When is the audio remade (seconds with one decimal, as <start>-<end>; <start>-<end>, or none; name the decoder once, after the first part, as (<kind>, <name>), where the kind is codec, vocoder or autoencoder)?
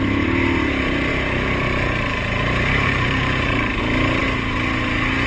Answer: 1.1-3.8 (vocoder, BigVGAN v2)